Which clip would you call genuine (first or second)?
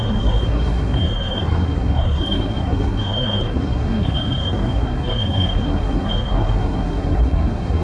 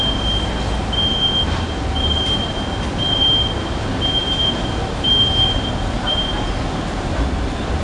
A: second